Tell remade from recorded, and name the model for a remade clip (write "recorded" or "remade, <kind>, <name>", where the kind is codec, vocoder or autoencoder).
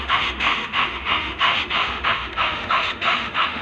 remade, autoencoder, DAC-VAE